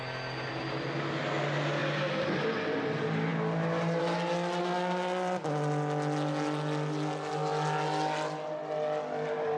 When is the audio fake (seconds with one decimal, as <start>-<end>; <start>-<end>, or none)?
none